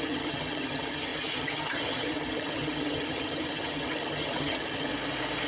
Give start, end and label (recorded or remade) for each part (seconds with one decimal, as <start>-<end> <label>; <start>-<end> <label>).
0.0-4.9 remade; 4.9-5.5 recorded